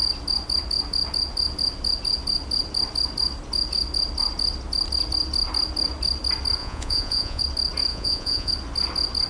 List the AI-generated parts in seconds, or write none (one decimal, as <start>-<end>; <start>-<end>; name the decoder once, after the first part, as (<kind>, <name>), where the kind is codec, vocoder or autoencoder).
6.6-7.4 (vocoder, Vocos); 7.9-8.5